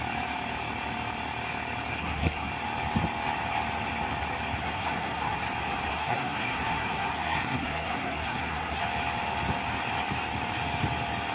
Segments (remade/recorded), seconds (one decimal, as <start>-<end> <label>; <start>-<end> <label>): 0.0-1.9 recorded; 1.9-2.5 remade; 2.5-4.6 recorded; 4.6-5.4 remade; 5.4-5.9 recorded; 5.9-8.8 remade; 8.8-11.3 recorded